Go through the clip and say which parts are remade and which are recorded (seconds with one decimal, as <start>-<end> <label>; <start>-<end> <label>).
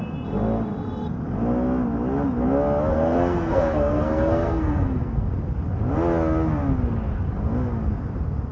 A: 0.0-2.9 recorded; 2.9-5.3 remade; 5.3-8.5 recorded